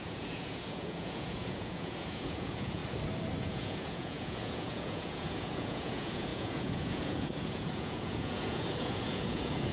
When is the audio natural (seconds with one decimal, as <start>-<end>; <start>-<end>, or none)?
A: 2.8-3.4